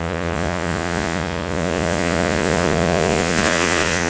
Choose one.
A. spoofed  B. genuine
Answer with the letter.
A